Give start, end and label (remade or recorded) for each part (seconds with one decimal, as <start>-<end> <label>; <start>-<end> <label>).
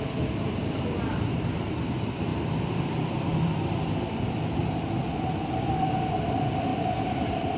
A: 0.0-4.6 remade; 4.6-6.1 recorded; 6.1-7.6 remade